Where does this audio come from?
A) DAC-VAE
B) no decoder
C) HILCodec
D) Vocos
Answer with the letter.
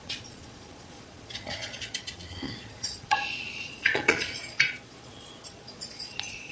D